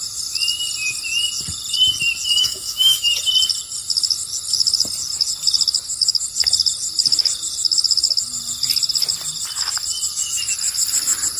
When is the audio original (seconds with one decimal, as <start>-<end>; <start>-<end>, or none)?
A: 0.0-2.3; 3.1-11.4